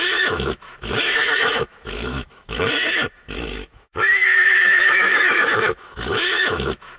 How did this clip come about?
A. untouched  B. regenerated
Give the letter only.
B